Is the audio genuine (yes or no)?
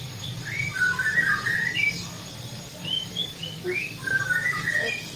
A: no